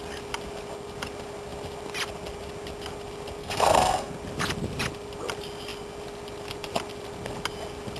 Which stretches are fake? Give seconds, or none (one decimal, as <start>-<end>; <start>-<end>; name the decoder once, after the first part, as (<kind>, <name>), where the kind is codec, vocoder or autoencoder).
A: 3.4-4.1 (codec, SNAC)